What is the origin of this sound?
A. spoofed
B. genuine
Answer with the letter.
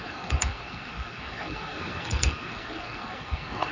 A